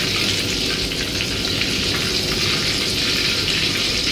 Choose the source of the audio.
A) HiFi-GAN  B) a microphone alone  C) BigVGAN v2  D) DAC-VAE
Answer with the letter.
B